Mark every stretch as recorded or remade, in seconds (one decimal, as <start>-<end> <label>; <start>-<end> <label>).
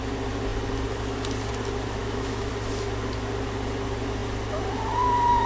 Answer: 0.0-2.0 recorded; 2.0-2.5 remade; 2.5-5.5 recorded